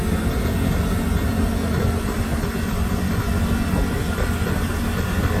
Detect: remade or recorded recorded